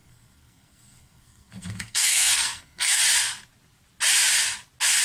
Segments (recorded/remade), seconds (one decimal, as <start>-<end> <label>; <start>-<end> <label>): 0.0-3.0 remade; 3.0-5.0 recorded